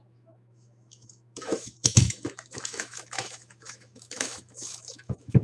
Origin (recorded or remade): remade